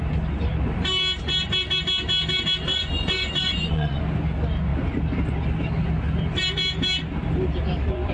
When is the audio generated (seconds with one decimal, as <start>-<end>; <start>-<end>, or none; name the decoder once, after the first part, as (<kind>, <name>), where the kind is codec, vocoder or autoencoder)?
2.7-4.0 (vocoder, Vocos)